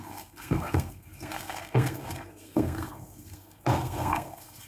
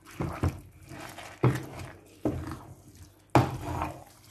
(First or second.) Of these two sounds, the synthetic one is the first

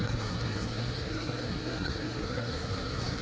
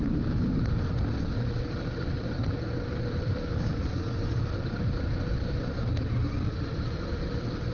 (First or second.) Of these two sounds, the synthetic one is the first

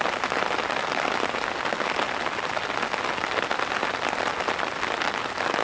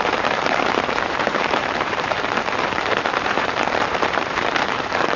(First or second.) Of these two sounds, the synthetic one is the second